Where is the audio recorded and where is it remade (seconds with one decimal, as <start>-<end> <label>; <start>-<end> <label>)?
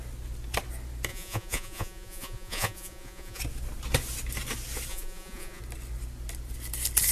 0.0-1.1 recorded; 1.1-3.4 remade; 3.4-4.9 recorded; 4.9-5.6 remade; 5.6-7.1 recorded